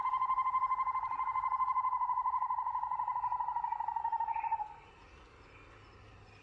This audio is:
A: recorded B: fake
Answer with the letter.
A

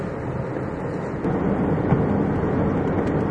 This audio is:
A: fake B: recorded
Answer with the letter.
B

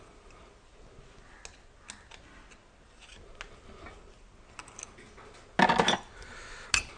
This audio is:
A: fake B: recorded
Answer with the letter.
B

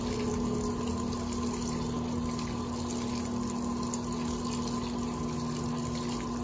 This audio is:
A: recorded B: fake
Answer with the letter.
A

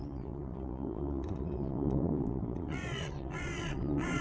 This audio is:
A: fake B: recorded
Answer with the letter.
A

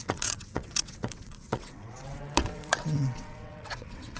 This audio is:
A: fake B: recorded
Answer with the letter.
A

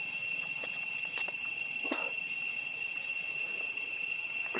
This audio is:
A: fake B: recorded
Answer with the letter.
A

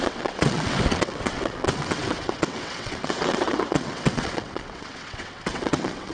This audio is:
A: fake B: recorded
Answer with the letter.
A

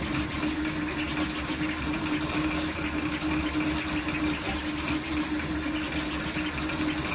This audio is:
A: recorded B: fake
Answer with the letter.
A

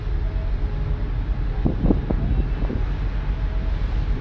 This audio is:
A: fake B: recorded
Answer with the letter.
B